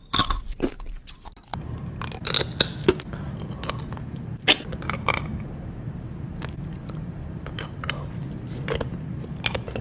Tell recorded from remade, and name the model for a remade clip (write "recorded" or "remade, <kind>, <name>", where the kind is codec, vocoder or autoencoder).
recorded